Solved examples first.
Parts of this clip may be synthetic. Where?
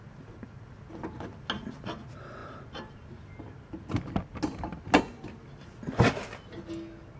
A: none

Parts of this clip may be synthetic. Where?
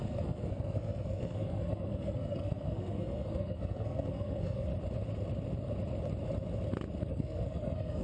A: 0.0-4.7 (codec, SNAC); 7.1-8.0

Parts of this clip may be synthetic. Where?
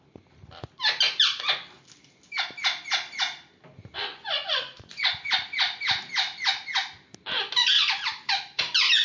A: 4.1-5.1 (vocoder, Vocos)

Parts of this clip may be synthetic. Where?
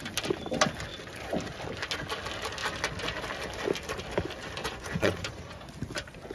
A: 4.6-5.7 (vocoder, Vocos)